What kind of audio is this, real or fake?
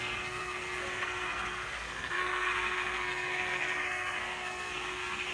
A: fake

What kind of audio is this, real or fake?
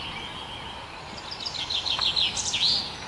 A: real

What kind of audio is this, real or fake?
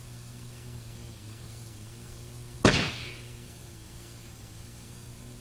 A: fake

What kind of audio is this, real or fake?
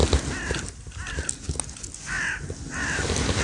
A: real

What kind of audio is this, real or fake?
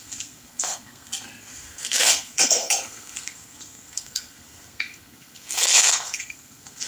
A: fake